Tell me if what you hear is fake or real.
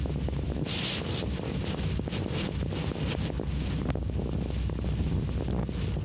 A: real